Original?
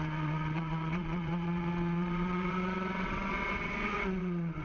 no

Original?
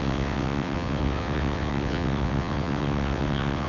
no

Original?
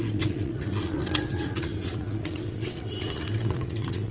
no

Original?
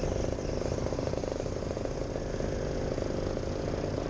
yes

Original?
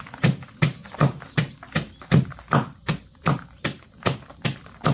yes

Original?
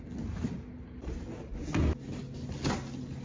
yes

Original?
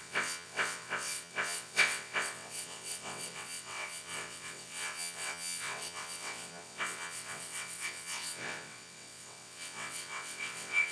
no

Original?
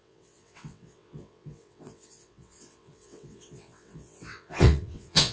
no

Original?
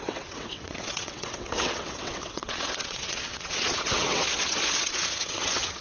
no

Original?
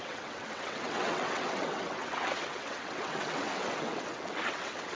no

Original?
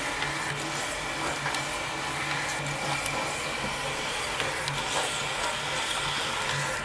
yes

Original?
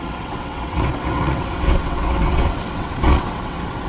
no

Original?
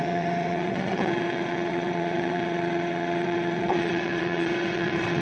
no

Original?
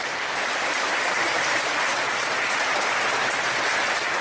yes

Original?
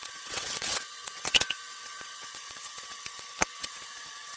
no